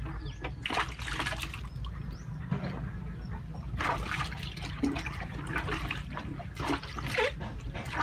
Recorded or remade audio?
recorded